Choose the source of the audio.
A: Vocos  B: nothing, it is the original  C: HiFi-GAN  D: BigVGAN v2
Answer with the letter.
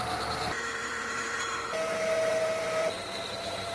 D